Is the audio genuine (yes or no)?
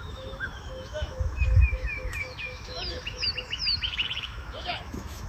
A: no